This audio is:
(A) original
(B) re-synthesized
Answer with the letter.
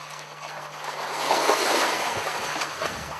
B